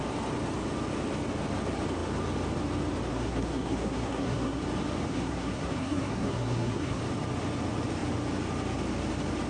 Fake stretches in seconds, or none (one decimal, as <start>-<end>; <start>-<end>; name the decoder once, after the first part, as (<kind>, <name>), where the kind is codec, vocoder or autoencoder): 3.1-4.6 (codec, SNAC); 5.1-7.0